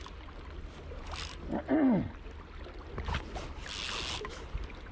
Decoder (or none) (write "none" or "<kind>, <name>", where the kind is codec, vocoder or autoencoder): none